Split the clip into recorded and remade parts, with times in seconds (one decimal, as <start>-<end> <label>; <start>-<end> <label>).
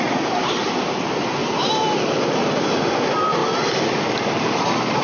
0.0-1.4 recorded; 1.4-2.8 remade; 2.8-3.4 recorded; 3.4-5.0 remade